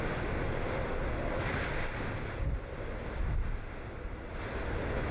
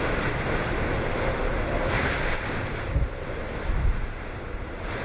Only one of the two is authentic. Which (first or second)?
first